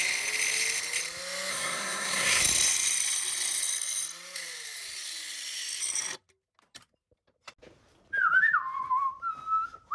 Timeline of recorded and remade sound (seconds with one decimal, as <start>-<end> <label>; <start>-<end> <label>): 0.0-1.5 recorded; 1.5-2.4 remade; 2.4-9.9 recorded